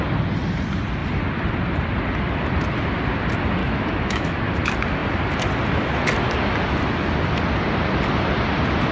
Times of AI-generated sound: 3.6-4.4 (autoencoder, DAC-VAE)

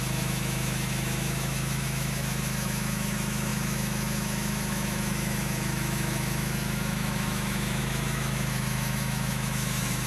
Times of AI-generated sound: 0.0-10.1 (autoencoder, DAC-VAE)

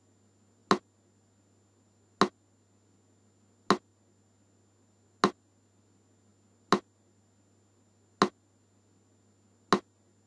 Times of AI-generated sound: none

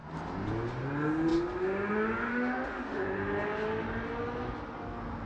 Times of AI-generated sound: 2.3-3.0 (autoencoder, DAC-VAE)

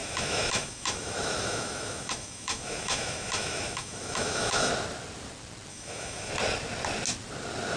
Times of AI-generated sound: 0.0-4.7 (autoencoder, DAC-VAE); 5.7-6.3

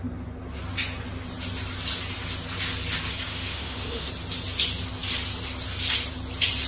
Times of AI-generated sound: 3.3-4.1 (autoencoder, DAC-VAE)